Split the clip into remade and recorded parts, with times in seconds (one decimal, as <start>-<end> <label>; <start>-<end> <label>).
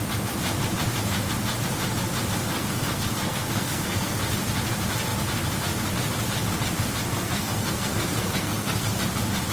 0.0-2.4 recorded; 2.4-4.2 remade; 4.2-7.1 recorded; 7.1-8.9 remade; 8.9-9.5 recorded